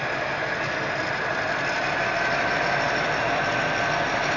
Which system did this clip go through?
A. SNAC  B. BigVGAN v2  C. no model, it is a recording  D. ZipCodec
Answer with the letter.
C